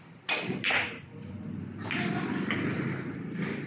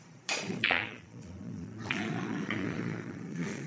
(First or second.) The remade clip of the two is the second